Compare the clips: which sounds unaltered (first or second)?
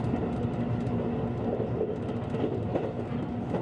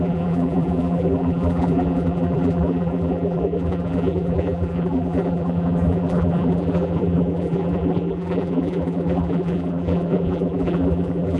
first